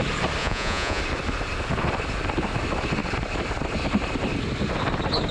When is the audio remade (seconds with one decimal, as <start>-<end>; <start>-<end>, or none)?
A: 0.4-1.0